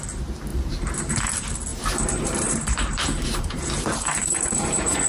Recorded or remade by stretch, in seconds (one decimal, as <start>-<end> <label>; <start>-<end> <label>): 0.0-0.5 recorded; 0.5-1.1 remade; 1.1-1.7 recorded; 1.7-5.1 remade